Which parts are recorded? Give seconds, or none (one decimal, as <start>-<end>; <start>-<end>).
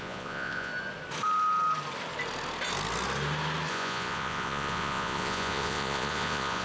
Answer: 0.7-3.7